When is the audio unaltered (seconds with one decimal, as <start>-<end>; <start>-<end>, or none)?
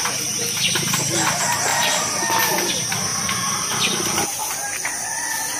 0.0-5.6